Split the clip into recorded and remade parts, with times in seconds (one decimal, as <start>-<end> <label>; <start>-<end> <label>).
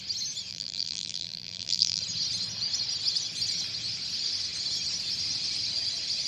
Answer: 0.0-0.5 recorded; 0.5-2.0 remade; 2.0-6.3 recorded